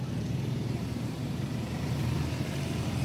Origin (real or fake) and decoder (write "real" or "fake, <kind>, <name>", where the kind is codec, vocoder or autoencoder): fake, vocoder, BigVGAN v2